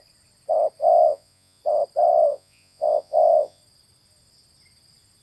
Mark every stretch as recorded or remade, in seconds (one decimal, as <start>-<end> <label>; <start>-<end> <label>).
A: 0.0-0.8 recorded; 0.8-1.6 remade; 1.6-2.3 recorded; 2.3-3.6 remade; 3.6-5.2 recorded